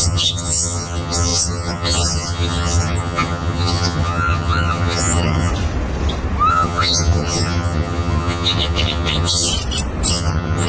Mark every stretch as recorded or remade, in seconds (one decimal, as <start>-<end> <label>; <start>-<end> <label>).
0.0-5.5 remade; 5.5-6.5 recorded; 6.5-9.5 remade; 9.5-10.1 recorded; 10.1-10.7 remade